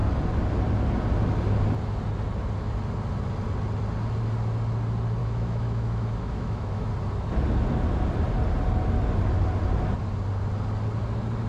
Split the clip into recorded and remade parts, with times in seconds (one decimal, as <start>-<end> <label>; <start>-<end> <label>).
0.0-5.2 recorded; 5.2-6.9 remade; 6.9-11.5 recorded